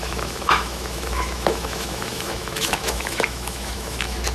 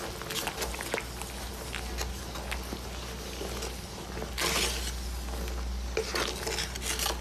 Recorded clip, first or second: second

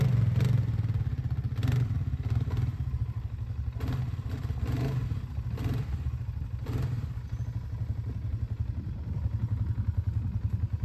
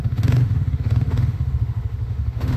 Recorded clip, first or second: first